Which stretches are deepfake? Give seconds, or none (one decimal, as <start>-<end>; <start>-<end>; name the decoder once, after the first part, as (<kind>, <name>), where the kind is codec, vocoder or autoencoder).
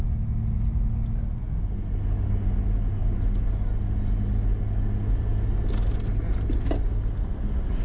none